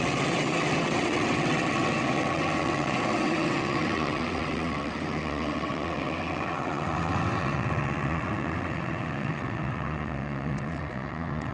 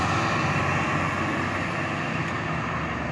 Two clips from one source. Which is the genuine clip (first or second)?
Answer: second